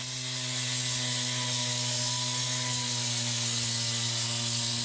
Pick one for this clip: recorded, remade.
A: recorded